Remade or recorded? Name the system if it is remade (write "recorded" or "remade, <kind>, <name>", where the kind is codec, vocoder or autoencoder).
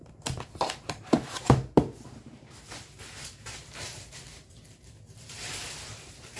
remade, vocoder, BigVGAN v2